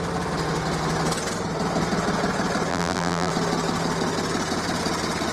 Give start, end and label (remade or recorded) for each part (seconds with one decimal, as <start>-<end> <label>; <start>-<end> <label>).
0.0-2.7 recorded; 2.7-3.3 remade; 3.3-5.3 recorded